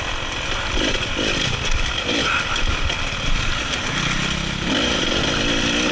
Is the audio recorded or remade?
recorded